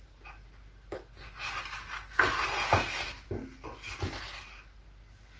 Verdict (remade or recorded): recorded